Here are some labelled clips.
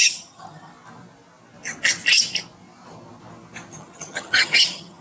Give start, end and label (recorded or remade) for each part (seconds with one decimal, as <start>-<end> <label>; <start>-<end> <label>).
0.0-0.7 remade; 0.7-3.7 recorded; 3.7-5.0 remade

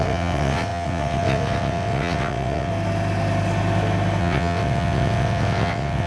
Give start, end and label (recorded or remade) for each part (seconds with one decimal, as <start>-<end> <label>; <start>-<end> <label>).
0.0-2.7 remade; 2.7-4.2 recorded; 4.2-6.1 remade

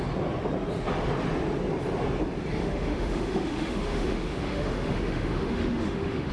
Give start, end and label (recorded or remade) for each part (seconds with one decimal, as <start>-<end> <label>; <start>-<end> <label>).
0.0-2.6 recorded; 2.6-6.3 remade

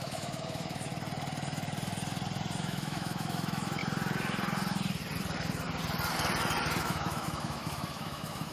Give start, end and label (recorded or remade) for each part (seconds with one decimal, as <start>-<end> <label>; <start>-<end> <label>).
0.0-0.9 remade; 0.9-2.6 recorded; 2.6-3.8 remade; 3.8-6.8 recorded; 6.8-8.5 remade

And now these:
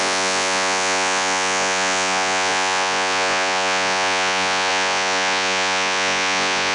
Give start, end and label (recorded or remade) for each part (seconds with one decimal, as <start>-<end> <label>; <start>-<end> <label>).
0.0-6.7 remade